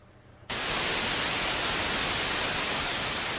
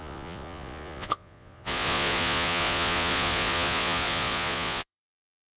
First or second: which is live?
first